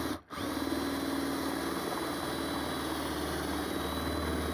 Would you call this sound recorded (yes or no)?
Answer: yes